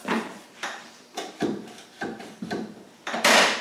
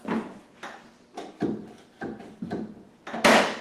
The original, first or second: second